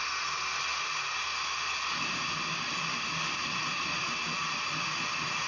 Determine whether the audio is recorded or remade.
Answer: recorded